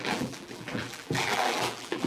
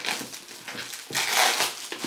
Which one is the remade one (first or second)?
first